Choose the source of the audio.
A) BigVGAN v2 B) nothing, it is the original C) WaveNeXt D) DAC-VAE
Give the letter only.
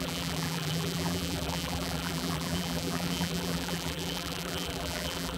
A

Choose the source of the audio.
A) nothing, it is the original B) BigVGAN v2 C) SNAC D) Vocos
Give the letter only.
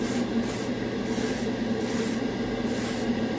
A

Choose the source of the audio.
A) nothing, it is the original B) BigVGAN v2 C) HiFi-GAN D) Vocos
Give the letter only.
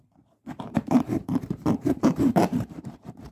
B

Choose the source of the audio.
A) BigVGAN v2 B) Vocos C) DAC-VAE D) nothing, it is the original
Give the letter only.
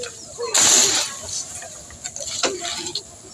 D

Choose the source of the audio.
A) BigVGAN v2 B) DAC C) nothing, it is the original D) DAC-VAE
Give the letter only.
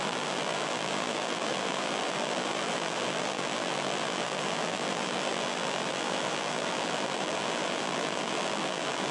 A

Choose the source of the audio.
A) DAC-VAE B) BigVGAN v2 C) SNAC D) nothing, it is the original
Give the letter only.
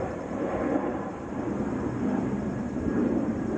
B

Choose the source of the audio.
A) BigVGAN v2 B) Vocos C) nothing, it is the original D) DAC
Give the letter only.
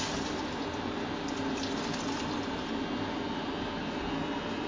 A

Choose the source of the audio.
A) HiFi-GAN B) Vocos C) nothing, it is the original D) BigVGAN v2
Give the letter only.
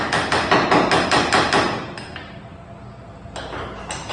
C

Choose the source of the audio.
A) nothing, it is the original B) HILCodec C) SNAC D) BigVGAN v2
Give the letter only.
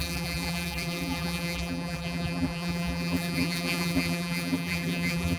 D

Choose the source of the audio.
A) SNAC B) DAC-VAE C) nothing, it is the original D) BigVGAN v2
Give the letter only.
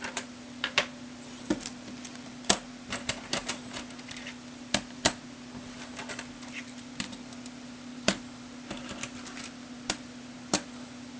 D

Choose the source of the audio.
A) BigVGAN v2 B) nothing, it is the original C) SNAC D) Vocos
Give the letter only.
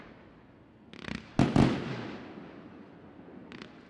B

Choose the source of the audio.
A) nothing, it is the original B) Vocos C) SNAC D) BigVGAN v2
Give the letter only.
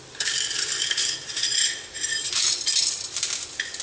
D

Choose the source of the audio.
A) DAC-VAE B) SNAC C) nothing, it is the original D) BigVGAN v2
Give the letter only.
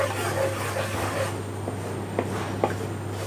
C